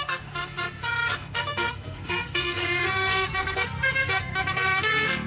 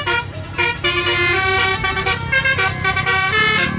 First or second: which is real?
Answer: second